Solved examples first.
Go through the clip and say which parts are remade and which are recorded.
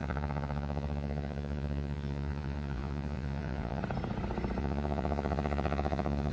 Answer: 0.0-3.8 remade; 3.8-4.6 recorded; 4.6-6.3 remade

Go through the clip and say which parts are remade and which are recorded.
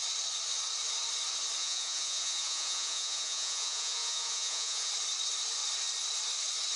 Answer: 0.0-1.6 recorded; 1.6-4.9 remade; 4.9-6.8 recorded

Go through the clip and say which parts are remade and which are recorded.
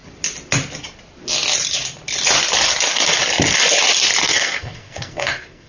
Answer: 0.0-4.2 recorded; 4.2-5.7 remade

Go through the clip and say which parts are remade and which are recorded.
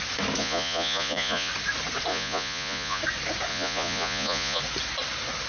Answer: 0.0-0.4 recorded; 0.4-1.5 remade; 1.5-2.1 recorded; 2.1-3.0 remade; 3.0-3.5 recorded; 3.5-4.6 remade; 4.6-5.5 recorded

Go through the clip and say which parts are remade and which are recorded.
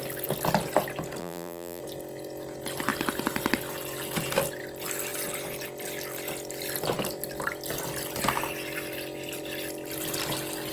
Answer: 0.0-1.2 recorded; 1.2-1.8 remade; 1.8-10.7 recorded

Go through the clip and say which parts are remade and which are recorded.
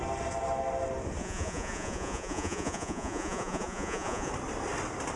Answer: 0.0-1.2 recorded; 1.2-4.3 remade; 4.3-5.2 recorded